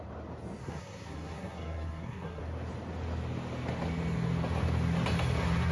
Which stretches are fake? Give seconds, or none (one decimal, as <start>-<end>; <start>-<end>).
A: 0.6-2.4